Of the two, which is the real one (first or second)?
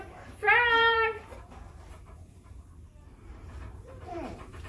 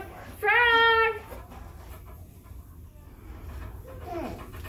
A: second